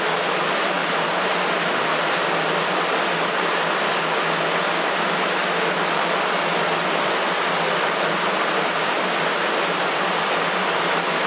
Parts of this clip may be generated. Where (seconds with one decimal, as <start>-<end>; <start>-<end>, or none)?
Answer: none